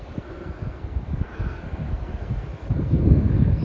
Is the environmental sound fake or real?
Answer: fake